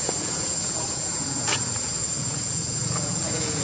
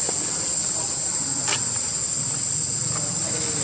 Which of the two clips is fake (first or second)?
first